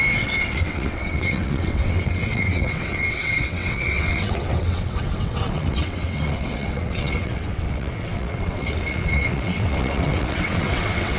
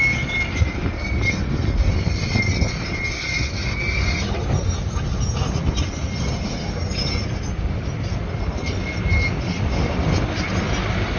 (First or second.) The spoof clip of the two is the first